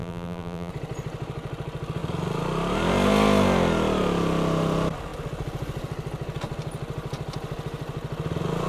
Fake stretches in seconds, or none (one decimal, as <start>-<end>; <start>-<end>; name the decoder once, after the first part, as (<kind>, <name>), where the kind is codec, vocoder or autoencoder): 0.0-0.7 (vocoder, BigVGAN v2)